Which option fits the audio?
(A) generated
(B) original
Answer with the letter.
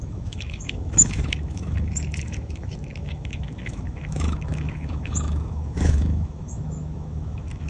A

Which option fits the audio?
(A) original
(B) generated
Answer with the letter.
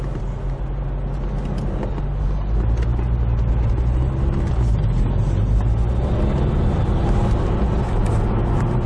A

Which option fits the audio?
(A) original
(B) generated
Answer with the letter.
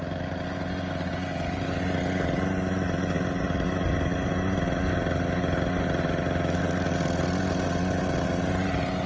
A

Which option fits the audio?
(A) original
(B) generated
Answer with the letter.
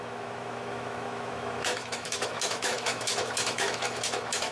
B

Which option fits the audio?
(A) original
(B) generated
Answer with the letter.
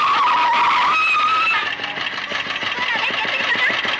A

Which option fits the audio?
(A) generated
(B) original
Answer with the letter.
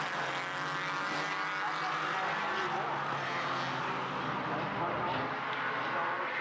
B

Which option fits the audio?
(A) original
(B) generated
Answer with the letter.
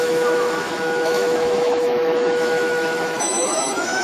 B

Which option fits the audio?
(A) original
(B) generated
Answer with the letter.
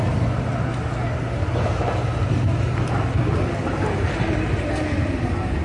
A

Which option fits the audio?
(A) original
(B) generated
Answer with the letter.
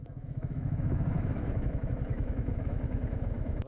B